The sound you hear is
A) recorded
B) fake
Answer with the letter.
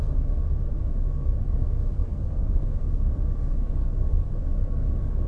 B